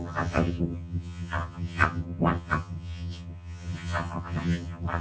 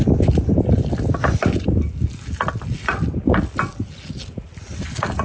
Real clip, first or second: second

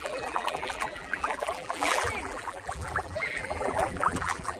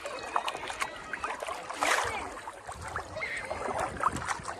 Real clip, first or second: second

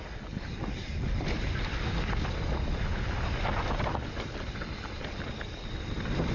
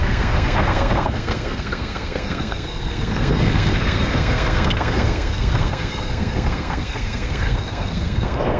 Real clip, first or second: first